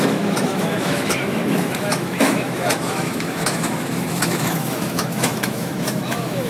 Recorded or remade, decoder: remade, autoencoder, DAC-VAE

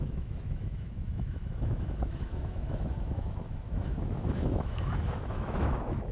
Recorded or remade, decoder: remade, autoencoder, DAC-VAE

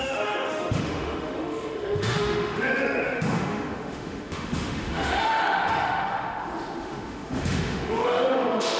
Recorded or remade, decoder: remade, autoencoder, DAC-VAE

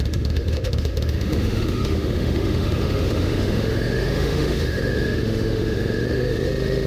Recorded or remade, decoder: remade, autoencoder, DAC-VAE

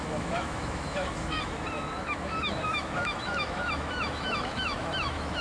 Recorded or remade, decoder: remade, autoencoder, DAC-VAE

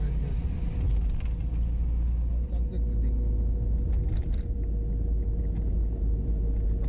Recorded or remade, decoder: recorded